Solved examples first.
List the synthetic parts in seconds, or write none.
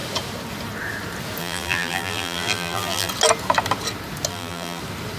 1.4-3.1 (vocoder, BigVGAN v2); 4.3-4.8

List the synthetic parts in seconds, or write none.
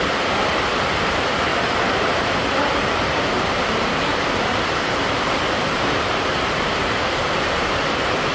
1.5-6.3 (vocoder, BigVGAN v2); 6.8-7.7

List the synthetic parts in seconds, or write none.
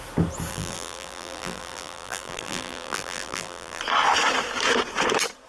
0.5-3.8 (vocoder, BigVGAN v2)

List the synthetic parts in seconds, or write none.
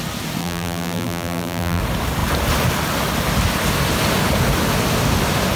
0.4-1.8 (vocoder, BigVGAN v2)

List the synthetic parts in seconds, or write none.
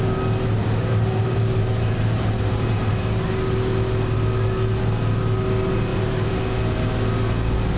0.6-3.1 (vocoder, BigVGAN v2); 5.9-6.4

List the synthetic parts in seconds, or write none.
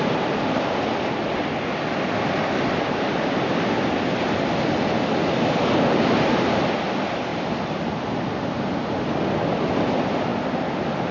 none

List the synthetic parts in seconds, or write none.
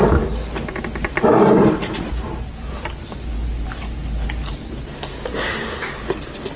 1.3-5.3 (vocoder, BigVGAN v2)